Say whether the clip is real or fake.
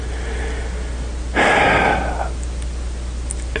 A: real